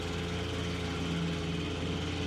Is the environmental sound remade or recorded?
recorded